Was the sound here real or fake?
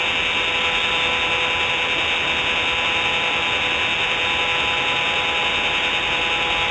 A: real